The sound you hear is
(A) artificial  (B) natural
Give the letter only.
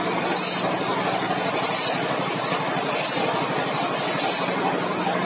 B